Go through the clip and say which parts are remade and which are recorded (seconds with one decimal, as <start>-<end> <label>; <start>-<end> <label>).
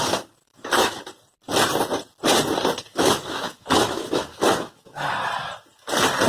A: 0.0-0.5 recorded; 0.5-1.0 remade; 1.0-2.9 recorded; 2.9-5.1 remade; 5.1-6.3 recorded